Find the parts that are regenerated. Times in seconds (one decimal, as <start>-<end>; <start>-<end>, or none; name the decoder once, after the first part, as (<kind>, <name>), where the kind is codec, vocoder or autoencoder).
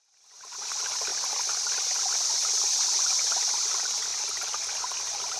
none